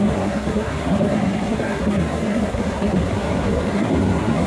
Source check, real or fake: fake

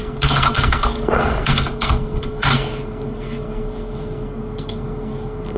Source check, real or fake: fake